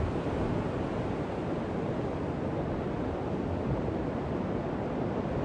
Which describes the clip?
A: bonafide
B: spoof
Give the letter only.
A